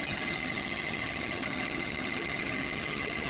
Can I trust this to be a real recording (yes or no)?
no